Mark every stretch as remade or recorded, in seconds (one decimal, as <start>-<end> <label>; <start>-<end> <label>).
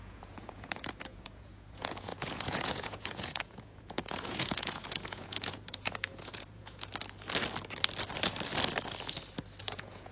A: 0.0-6.9 remade; 6.9-9.6 recorded; 9.6-10.1 remade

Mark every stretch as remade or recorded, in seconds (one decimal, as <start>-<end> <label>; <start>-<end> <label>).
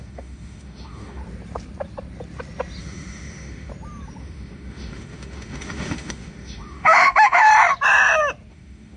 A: 0.0-1.2 remade; 1.2-2.8 recorded; 2.8-3.7 remade; 3.7-4.2 recorded; 4.2-7.5 remade; 7.5-8.5 recorded; 8.5-9.0 remade